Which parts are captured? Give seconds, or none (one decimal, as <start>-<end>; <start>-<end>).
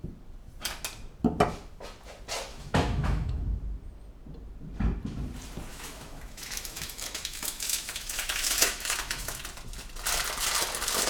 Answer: 0.0-2.5; 3.4-5.7; 9.4-11.1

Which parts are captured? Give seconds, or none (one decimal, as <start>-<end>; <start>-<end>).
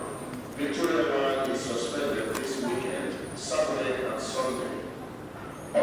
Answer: 0.0-5.8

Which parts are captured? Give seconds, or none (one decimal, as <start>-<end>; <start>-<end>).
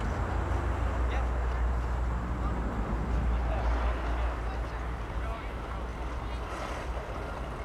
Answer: 0.0-7.6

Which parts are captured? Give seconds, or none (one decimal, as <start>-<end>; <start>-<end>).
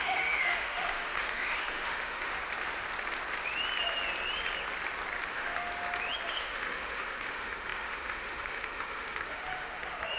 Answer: 2.3-5.3; 5.7-6.3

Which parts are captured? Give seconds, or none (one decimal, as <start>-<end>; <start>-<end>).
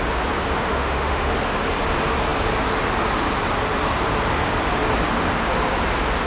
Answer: 0.0-0.7; 1.3-6.3